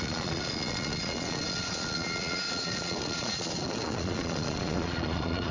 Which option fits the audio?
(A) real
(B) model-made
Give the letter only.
B